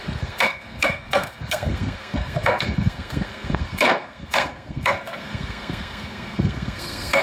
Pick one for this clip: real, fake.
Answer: fake